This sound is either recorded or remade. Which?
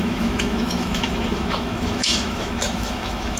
remade